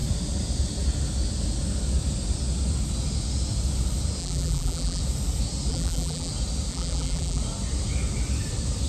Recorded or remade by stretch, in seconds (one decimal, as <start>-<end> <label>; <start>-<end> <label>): 0.0-4.2 recorded; 4.2-5.0 remade; 5.0-5.7 recorded; 5.7-6.3 remade; 6.3-6.7 recorded; 6.7-7.4 remade; 7.4-8.9 recorded